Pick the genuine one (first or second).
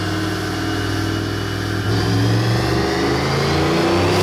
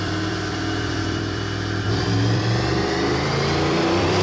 first